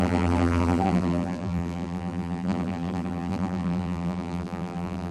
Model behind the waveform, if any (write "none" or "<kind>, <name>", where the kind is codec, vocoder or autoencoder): vocoder, BigVGAN v2